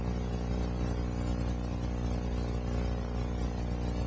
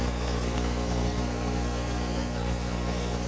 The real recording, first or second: first